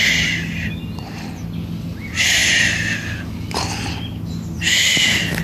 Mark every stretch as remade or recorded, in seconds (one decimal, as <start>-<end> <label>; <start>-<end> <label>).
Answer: 0.0-5.4 recorded